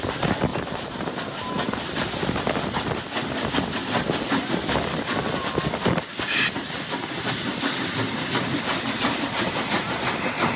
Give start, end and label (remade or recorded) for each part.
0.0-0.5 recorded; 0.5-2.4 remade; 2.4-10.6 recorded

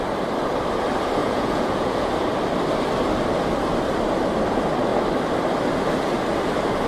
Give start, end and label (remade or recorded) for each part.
0.0-1.2 recorded; 1.2-2.1 remade; 2.1-6.9 recorded

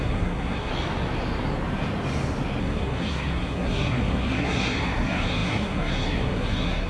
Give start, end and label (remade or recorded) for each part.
0.0-0.7 remade; 0.7-2.6 recorded; 2.6-6.9 remade

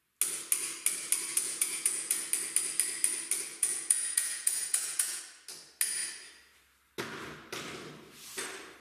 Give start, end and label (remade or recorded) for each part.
0.0-1.3 recorded; 1.3-2.2 remade; 2.2-3.5 recorded; 3.5-5.2 remade; 5.2-8.8 recorded

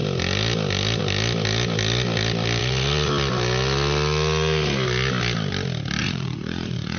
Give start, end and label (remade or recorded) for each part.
0.0-2.6 recorded; 2.6-3.1 remade; 3.1-6.0 recorded; 6.0-7.0 remade

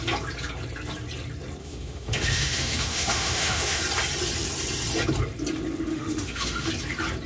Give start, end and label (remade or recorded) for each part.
0.0-1.6 recorded; 1.6-3.8 remade; 3.8-5.9 recorded; 5.9-6.7 remade; 6.7-7.3 recorded

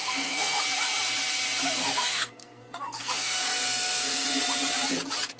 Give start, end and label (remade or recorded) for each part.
0.0-0.6 remade; 0.6-1.8 recorded; 1.8-4.4 remade; 4.4-5.4 recorded

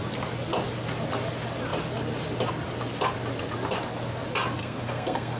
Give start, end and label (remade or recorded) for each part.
0.0-4.6 recorded; 4.6-5.4 remade